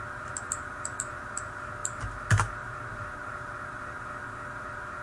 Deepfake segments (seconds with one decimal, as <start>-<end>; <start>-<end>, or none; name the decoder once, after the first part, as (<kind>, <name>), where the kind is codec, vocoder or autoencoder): none